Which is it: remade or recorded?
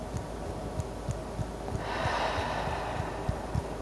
recorded